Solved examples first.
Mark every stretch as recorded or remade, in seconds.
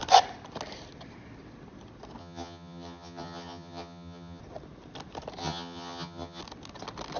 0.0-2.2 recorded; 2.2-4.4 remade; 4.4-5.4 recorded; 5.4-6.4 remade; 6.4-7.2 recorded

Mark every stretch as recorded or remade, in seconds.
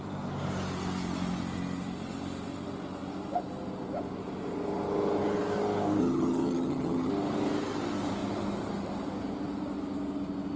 0.0-6.0 recorded; 6.0-7.1 remade; 7.1-10.6 recorded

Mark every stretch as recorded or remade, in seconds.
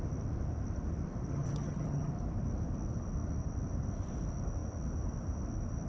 0.0-1.3 recorded; 1.3-2.1 remade; 2.1-5.9 recorded